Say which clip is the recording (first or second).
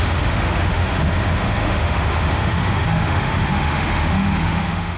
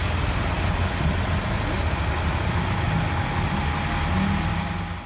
second